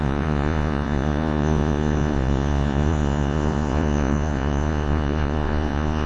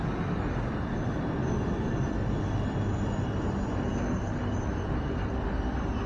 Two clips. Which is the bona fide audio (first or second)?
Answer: second